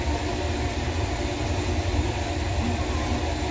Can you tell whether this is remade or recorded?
recorded